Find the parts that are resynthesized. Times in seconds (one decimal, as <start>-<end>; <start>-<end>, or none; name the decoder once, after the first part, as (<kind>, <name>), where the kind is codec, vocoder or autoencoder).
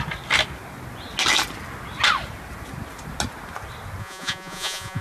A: 4.0-5.0 (vocoder, Vocos)